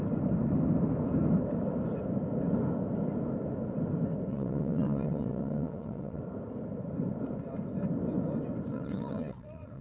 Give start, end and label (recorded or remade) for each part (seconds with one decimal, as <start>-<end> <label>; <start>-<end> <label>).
0.0-4.3 recorded; 4.3-6.2 remade; 6.2-8.7 recorded; 8.7-9.8 remade